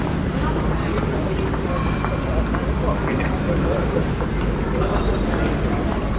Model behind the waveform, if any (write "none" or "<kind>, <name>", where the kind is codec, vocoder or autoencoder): none